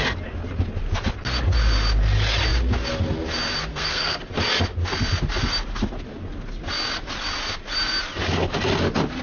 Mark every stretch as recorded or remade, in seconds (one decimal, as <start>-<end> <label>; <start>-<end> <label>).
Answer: 0.0-3.7 recorded; 3.7-4.3 remade; 4.3-9.2 recorded